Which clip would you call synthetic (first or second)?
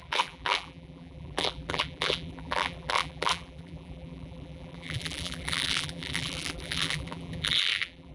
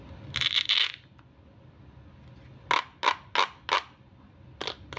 first